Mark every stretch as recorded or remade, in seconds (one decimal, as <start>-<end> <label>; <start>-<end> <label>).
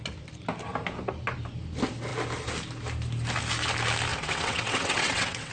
0.0-4.1 recorded; 4.1-5.5 remade